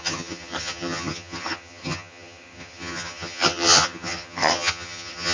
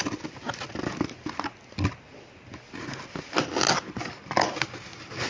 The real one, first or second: second